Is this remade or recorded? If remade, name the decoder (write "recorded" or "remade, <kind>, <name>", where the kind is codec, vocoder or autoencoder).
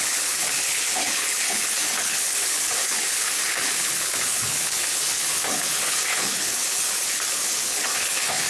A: remade, codec, HILCodec